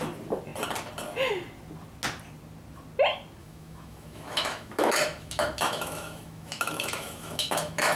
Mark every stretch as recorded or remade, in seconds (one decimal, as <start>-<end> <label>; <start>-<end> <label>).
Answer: 0.0-3.4 recorded; 3.4-8.0 remade